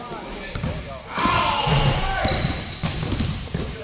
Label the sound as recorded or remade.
recorded